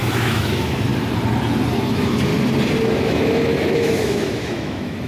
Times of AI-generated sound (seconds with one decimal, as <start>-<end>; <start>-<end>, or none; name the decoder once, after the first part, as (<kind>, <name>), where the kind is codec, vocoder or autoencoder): 0.0-0.9 (autoencoder, DAC-VAE); 1.9-2.3; 2.8-5.1